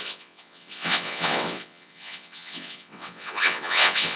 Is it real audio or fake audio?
fake